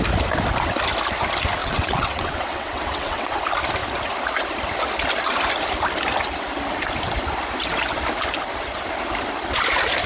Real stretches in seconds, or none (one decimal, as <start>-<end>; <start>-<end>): 0.0-1.6; 3.4-10.1